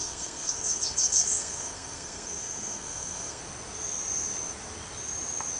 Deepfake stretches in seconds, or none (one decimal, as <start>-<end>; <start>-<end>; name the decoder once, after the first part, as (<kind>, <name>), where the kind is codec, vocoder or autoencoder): 0.0-3.4 (codec, SNAC)